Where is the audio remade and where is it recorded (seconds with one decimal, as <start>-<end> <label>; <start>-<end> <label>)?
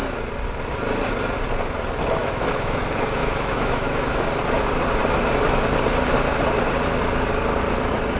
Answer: 0.0-2.2 recorded; 2.2-2.8 remade; 2.8-3.2 recorded; 3.2-4.3 remade; 4.3-8.2 recorded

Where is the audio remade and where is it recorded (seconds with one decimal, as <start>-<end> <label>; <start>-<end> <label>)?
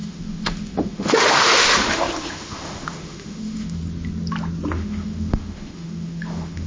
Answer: 0.0-3.8 remade; 3.8-4.7 recorded; 4.7-6.7 remade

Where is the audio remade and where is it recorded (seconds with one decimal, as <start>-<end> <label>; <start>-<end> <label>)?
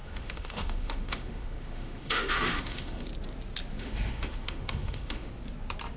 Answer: 0.0-3.1 remade; 3.1-3.7 recorded; 3.7-5.3 remade; 5.3-6.0 recorded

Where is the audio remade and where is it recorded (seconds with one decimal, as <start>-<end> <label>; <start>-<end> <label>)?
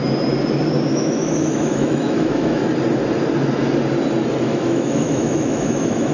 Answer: 0.0-0.9 recorded; 0.9-2.6 remade; 2.6-4.4 recorded; 4.4-6.1 remade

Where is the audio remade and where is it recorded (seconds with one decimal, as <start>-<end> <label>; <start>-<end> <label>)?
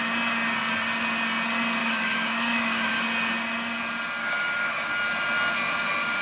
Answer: 0.0-1.8 recorded; 1.8-3.0 remade; 3.0-4.2 recorded; 4.2-4.9 remade; 4.9-6.2 recorded